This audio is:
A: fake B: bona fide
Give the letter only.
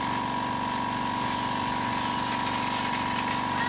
B